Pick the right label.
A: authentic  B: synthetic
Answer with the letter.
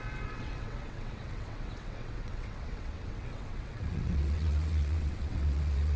B